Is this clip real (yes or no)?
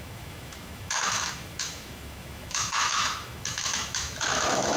no